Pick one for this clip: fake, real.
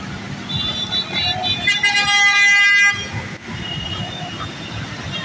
real